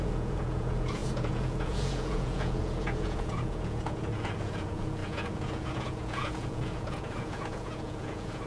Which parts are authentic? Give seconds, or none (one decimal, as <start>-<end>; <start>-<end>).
none

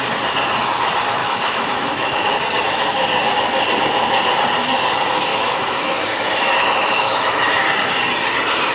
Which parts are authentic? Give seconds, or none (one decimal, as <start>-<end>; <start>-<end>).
0.0-1.2; 2.4-5.3; 7.6-8.7

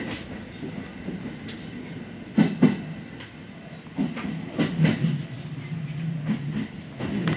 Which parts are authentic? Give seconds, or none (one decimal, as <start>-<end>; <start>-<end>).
0.0-7.4

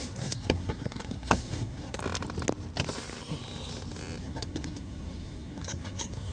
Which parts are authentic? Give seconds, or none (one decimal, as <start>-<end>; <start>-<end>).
2.0-4.2